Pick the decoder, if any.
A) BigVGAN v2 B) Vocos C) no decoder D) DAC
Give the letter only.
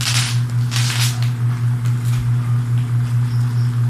C